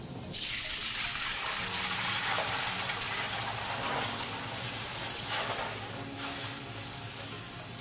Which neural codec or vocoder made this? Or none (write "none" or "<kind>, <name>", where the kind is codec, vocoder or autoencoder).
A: none